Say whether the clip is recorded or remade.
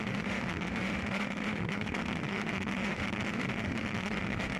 remade